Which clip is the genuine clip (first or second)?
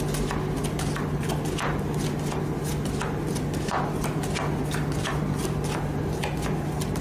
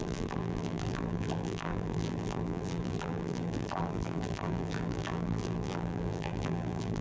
first